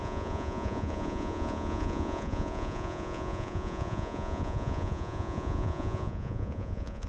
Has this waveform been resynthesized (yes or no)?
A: yes